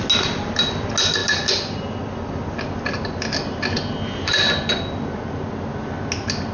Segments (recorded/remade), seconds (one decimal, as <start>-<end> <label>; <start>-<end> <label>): 0.0-6.5 recorded